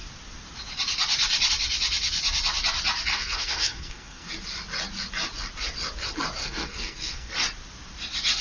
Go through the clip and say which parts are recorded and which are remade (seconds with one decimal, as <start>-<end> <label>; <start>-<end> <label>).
0.0-3.1 recorded; 3.1-4.3 remade; 4.3-6.4 recorded; 6.4-7.3 remade; 7.3-8.4 recorded